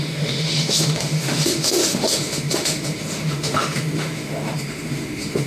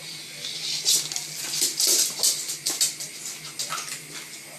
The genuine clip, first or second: second